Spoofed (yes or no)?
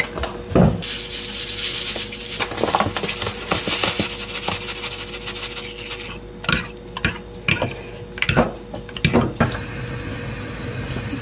no